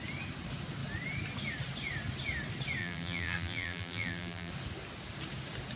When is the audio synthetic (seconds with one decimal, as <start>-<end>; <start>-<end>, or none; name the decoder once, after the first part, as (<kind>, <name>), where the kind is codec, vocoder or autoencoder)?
2.8-4.5 (vocoder, BigVGAN v2)